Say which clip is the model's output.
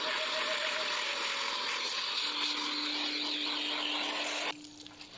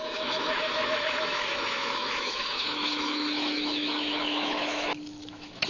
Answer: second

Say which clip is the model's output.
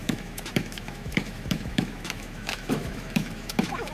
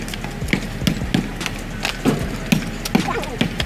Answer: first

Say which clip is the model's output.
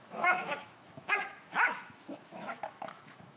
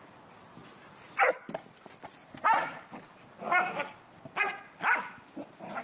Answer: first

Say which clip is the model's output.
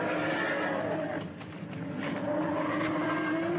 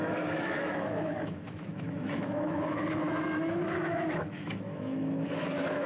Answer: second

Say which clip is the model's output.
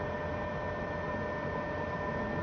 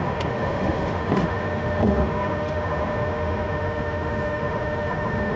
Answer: second